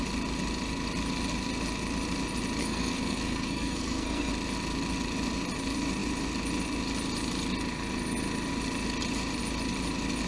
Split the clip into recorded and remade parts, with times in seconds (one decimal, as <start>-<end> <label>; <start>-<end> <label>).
0.0-2.6 recorded; 2.6-4.3 remade; 4.3-10.3 recorded